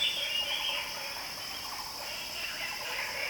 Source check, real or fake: real